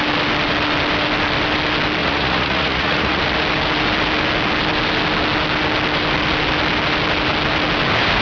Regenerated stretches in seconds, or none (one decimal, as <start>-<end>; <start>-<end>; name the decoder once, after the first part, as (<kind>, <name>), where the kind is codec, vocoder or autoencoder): 2.0-3.2 (vocoder, Vocos)

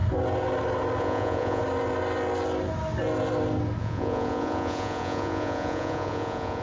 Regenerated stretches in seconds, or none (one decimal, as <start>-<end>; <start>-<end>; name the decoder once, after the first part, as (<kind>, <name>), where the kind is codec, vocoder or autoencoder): 1.0-1.6 (vocoder, Vocos); 3.8-6.6

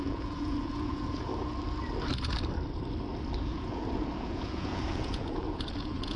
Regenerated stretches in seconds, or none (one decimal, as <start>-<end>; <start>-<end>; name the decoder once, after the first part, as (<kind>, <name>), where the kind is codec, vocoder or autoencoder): 0.0-1.3 (vocoder, Vocos); 3.4-6.2

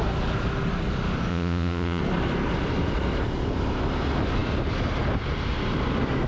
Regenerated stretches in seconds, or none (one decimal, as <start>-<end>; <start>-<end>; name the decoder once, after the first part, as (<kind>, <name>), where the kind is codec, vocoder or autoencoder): 1.3-2.0 (vocoder, Vocos)

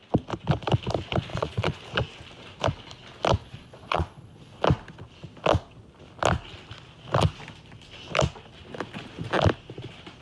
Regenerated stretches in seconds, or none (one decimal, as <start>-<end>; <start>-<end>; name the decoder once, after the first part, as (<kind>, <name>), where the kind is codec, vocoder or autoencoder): 1.3-1.8 (vocoder, Vocos); 3.4-4.6